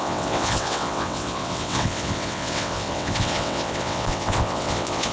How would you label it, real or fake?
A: fake